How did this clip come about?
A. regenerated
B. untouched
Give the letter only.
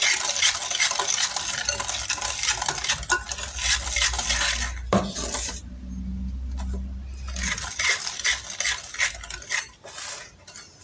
B